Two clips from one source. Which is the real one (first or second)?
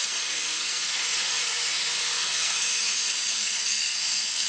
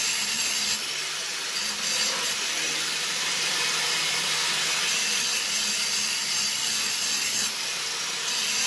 second